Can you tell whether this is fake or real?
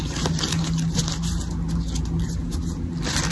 real